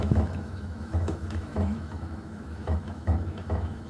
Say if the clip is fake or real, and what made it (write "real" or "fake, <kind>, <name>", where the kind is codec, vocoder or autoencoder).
fake, autoencoder, DAC-VAE